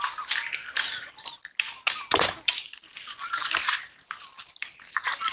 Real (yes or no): yes